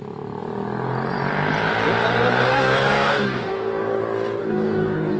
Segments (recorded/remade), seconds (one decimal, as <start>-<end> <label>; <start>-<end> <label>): 0.0-2.5 recorded; 2.5-4.0 remade; 4.0-4.4 recorded; 4.4-5.2 remade